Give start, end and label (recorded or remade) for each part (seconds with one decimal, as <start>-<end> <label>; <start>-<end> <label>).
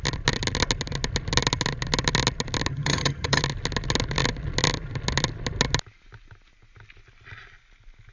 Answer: 0.0-2.7 recorded; 2.7-3.4 remade; 3.4-8.1 recorded